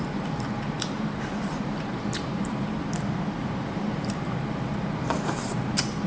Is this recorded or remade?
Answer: remade